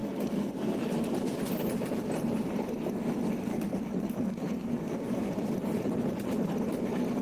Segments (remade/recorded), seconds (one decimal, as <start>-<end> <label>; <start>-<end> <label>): 0.0-0.5 remade; 0.5-3.5 recorded; 3.5-5.3 remade; 5.3-7.2 recorded